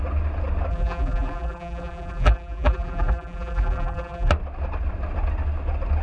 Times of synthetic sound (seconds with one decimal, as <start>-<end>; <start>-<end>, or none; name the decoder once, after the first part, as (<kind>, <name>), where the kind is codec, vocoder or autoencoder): 0.7-4.3 (vocoder, BigVGAN v2)